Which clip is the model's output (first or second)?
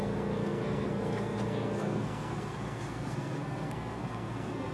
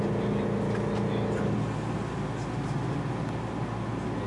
first